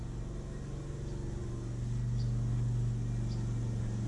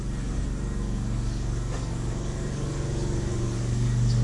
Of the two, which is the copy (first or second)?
second